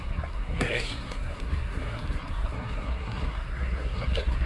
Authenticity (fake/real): fake